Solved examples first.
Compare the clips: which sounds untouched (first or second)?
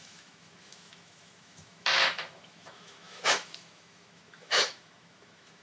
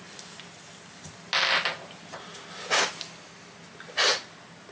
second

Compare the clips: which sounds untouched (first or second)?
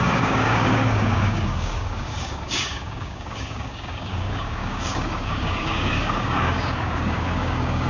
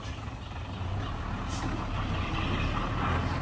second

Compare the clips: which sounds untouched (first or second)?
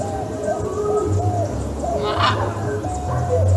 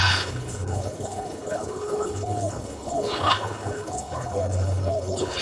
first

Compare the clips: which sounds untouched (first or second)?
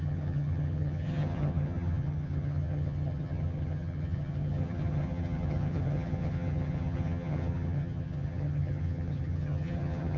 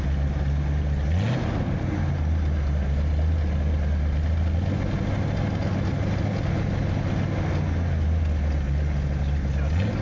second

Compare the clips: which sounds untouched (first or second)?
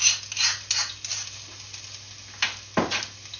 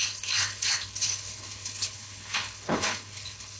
first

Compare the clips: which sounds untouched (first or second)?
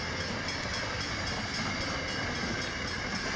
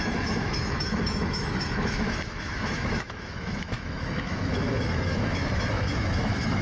first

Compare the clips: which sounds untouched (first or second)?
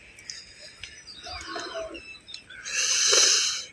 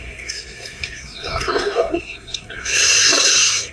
first